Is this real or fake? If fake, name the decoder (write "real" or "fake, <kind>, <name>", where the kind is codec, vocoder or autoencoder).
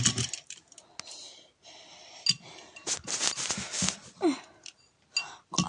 real